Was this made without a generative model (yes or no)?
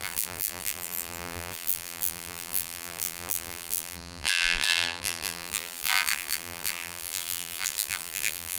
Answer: no